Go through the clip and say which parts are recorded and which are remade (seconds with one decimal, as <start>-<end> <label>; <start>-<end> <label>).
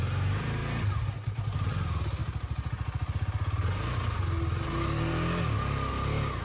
0.0-6.4 recorded